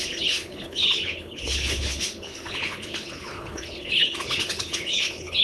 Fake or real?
fake